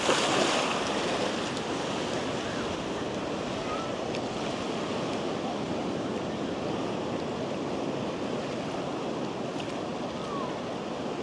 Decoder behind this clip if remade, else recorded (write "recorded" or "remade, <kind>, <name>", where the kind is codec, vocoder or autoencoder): recorded